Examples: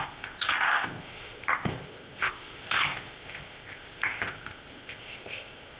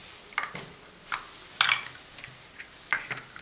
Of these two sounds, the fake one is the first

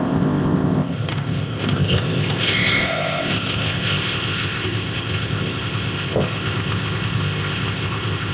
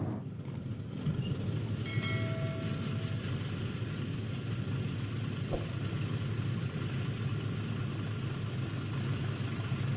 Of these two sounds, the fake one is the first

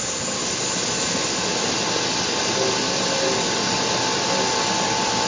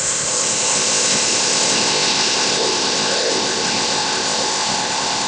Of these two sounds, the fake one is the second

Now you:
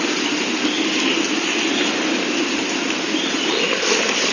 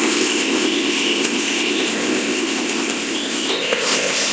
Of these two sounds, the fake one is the second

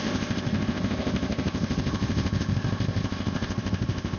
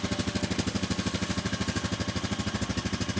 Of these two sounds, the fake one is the first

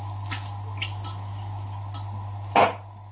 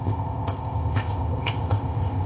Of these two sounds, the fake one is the second